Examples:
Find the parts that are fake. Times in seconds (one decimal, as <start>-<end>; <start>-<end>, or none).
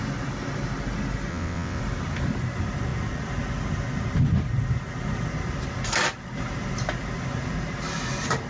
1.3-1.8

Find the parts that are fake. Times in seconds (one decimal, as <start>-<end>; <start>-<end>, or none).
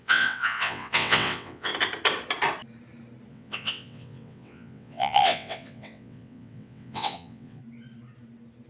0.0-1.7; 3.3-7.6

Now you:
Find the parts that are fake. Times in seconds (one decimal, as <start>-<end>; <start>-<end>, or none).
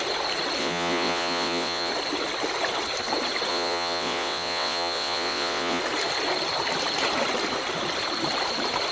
0.6-1.9; 3.5-5.8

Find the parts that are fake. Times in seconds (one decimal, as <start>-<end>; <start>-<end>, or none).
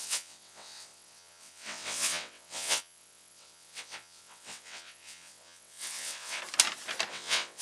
0.0-6.4; 7.1-7.6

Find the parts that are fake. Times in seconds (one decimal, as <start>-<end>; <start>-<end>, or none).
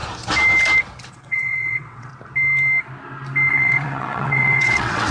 1.1-2.1; 3.5-5.1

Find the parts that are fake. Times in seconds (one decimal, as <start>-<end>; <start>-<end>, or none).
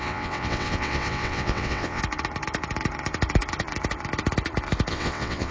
0.0-2.0; 4.9-5.5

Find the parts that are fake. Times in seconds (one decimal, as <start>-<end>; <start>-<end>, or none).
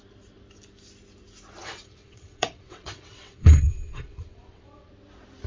1.6-4.9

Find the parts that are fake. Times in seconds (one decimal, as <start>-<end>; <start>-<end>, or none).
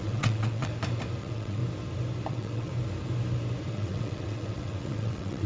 0.0-0.7; 1.2-1.6; 2.3-2.7; 3.7-5.5